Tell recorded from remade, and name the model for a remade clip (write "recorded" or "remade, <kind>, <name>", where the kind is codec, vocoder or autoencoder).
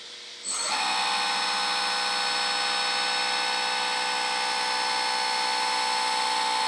recorded